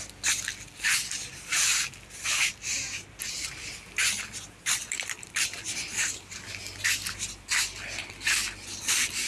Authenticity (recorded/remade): recorded